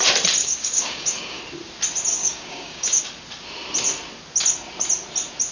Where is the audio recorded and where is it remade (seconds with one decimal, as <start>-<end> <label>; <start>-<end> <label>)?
0.0-0.4 recorded; 0.4-1.4 remade; 1.4-2.2 recorded; 2.2-3.0 remade; 3.0-5.5 recorded